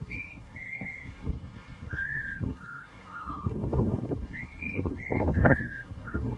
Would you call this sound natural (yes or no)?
no